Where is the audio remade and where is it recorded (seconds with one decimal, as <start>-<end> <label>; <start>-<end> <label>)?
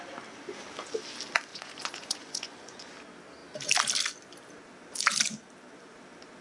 0.0-1.5 recorded; 1.5-2.9 remade; 2.9-6.4 recorded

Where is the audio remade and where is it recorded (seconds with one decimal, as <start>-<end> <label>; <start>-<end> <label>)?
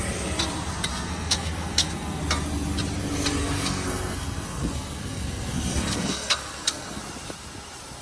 0.0-0.9 recorded; 0.9-2.2 remade; 2.2-3.4 recorded; 3.4-7.0 remade; 7.0-8.0 recorded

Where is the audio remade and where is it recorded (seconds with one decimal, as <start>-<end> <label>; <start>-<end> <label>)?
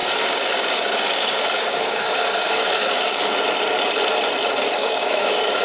0.0-3.4 remade; 3.4-4.8 recorded; 4.8-5.6 remade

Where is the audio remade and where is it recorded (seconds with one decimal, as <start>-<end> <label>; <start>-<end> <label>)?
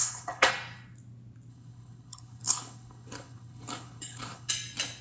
0.0-0.5 remade; 0.5-1.5 recorded; 1.5-4.5 remade; 4.5-5.0 recorded